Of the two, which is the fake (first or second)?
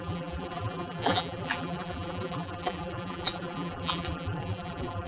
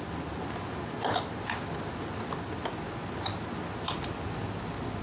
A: first